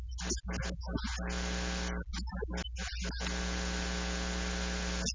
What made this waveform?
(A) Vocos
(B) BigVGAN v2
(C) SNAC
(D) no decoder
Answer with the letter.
D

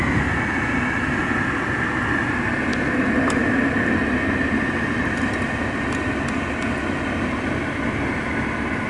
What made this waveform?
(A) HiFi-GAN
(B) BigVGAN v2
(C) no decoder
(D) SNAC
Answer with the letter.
C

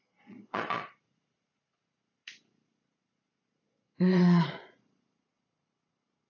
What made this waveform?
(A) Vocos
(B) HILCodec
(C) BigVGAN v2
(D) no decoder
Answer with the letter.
A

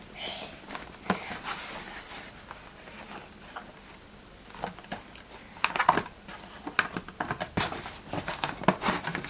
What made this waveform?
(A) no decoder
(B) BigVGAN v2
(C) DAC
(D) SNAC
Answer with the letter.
A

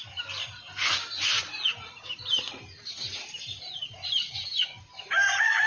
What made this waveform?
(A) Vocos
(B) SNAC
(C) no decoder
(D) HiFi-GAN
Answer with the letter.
C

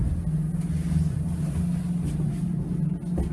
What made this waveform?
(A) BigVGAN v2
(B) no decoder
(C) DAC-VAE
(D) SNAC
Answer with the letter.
B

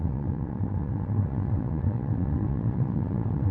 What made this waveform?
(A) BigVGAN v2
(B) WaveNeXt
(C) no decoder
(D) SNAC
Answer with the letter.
B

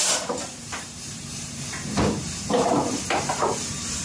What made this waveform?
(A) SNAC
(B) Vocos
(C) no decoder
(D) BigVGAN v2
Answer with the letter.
D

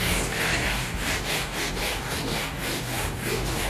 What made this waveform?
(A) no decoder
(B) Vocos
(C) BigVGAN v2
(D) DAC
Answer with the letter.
D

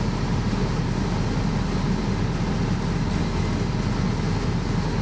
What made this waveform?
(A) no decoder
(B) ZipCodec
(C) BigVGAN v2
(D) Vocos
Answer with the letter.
A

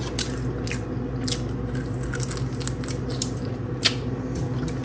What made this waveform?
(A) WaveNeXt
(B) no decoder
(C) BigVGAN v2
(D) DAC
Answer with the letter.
B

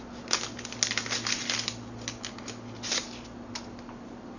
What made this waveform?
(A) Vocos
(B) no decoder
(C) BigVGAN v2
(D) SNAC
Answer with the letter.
B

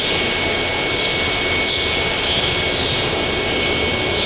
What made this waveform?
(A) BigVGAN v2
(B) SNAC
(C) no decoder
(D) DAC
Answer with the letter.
C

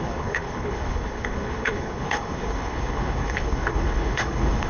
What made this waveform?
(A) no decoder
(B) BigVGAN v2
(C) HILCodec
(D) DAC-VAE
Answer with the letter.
C